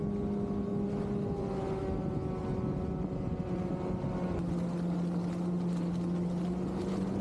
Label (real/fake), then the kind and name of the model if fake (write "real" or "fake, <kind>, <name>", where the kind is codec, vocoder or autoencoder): real